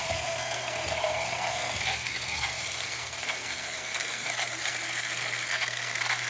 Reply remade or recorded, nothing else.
remade